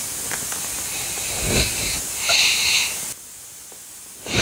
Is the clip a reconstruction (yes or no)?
no